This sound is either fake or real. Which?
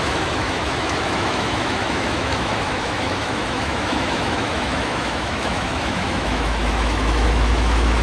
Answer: fake